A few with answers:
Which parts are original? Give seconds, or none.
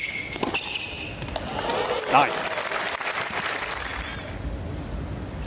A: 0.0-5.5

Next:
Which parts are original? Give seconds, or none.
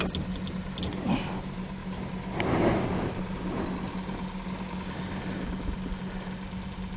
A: 0.0-7.0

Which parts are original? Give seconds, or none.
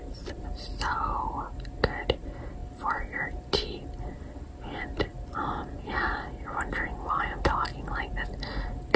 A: 0.0-9.0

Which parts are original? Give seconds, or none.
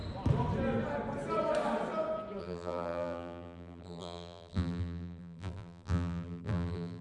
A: 0.0-2.4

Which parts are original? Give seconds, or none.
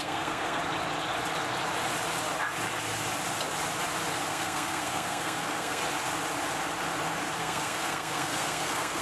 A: 0.6-4.3; 5.8-7.4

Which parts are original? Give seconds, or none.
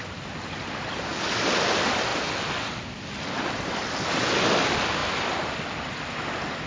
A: 0.0-6.7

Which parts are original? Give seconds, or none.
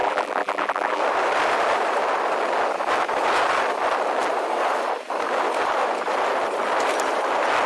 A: 1.0-7.7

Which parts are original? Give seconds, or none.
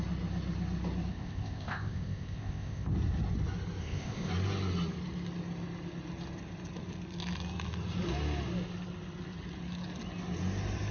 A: 0.0-1.1; 2.9-3.8; 4.3-10.9